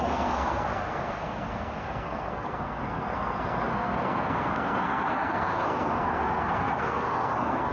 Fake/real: fake